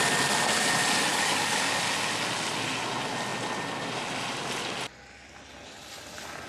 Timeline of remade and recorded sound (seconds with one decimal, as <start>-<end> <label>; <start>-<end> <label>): 0.0-1.1 recorded; 1.1-1.8 remade; 1.8-6.5 recorded

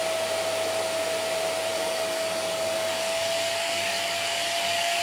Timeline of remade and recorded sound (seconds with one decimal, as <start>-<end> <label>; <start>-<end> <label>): 0.0-1.7 recorded; 1.7-5.0 remade